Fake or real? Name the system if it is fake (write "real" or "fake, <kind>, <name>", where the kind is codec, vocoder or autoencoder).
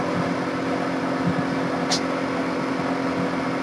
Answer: real